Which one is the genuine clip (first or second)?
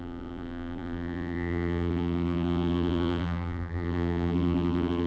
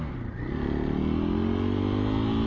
second